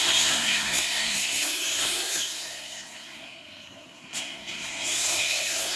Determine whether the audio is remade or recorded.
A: remade